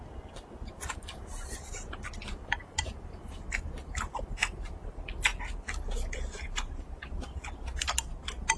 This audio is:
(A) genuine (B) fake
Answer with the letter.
A